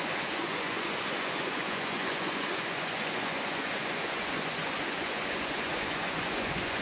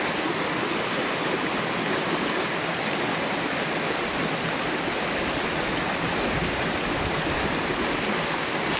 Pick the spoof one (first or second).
first